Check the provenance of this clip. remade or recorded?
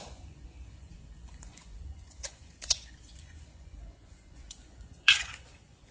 remade